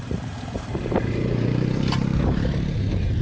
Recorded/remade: remade